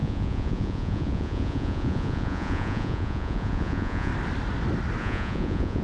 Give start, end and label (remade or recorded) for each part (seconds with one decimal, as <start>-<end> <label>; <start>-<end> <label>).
0.0-4.1 remade; 4.1-5.0 recorded; 5.0-5.8 remade